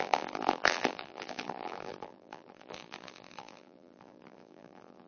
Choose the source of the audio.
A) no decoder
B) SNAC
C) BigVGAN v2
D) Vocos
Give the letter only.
C